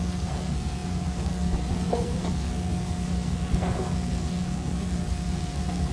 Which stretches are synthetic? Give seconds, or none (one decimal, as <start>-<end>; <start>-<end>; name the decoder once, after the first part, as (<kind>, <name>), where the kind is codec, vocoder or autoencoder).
0.0-5.9 (codec, SNAC)